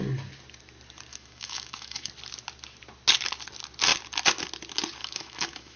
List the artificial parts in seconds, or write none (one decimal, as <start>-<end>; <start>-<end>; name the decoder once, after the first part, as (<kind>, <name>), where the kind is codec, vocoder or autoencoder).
1.1-2.1 (autoencoder, DAC-VAE); 5.0-5.8